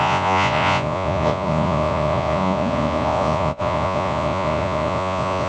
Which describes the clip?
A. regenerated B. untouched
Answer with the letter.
A